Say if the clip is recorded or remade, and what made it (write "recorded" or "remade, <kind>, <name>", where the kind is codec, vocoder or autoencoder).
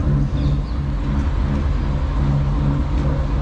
recorded